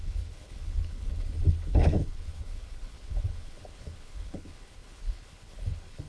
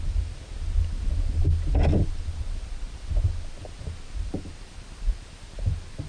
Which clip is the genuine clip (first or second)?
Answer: second